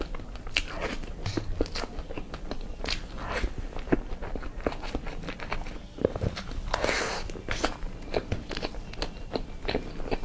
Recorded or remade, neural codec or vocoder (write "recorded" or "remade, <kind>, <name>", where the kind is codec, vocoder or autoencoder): recorded